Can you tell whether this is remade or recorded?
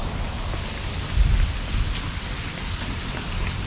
recorded